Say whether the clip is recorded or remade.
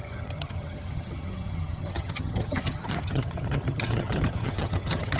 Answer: remade